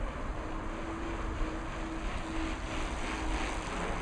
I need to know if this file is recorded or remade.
recorded